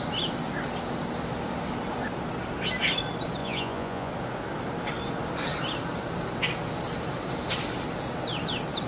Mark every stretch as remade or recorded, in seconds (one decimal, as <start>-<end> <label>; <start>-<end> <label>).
0.0-3.4 recorded; 3.4-4.1 remade; 4.1-8.9 recorded